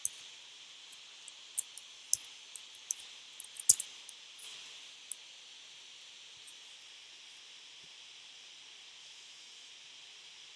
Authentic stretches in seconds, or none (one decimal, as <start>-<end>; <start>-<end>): 0.0-9.0; 9.7-10.6